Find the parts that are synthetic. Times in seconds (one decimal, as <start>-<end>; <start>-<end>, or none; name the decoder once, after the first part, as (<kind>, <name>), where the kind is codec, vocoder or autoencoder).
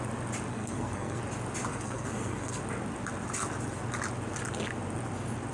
0.5-1.2 (codec, SNAC); 1.7-2.6